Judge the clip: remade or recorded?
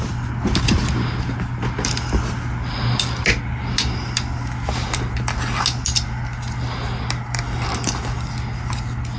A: recorded